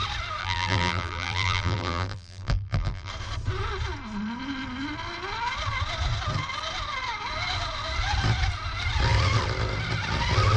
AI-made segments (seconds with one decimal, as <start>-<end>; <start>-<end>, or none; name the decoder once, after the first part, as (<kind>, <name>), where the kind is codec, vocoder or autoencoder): 0.4-3.1 (vocoder, BigVGAN v2)